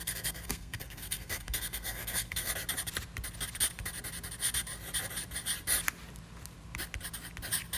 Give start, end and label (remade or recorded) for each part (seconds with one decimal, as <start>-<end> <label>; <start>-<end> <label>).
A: 0.0-2.5 remade; 2.5-7.8 recorded

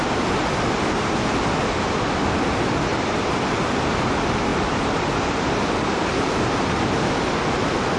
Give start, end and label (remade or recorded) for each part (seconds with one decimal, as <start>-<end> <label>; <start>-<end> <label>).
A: 0.0-2.9 recorded; 2.9-3.7 remade; 3.7-4.5 recorded; 4.5-7.2 remade; 7.2-8.0 recorded

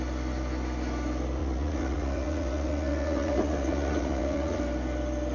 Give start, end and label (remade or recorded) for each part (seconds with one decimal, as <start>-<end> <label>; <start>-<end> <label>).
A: 0.0-1.4 recorded; 1.4-4.6 remade; 4.6-5.3 recorded